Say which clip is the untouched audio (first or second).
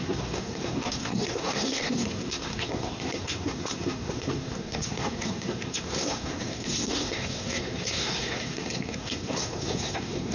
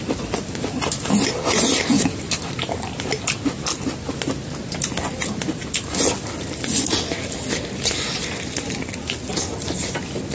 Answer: second